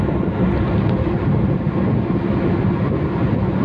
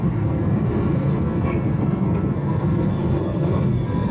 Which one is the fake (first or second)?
second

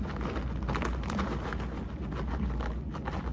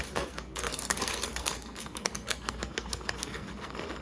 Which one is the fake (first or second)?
second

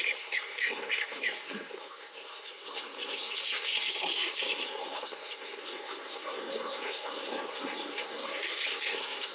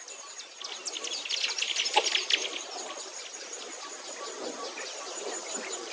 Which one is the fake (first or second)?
first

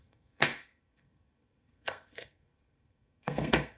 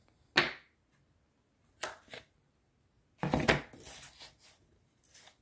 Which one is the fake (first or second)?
first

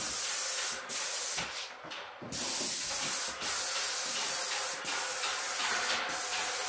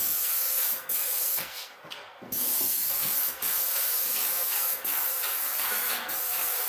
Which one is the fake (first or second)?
second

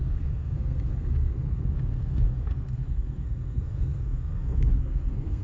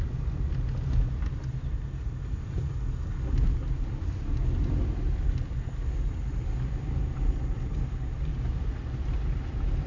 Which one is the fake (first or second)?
first